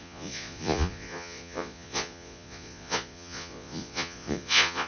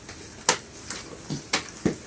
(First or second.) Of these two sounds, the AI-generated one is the first